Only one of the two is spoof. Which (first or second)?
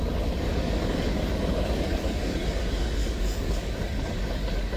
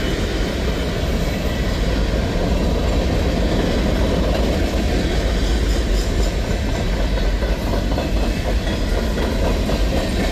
first